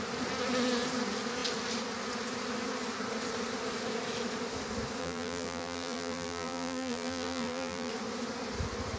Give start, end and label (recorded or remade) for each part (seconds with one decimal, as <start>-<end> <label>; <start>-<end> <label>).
0.0-5.0 recorded; 5.0-7.9 remade; 7.9-9.0 recorded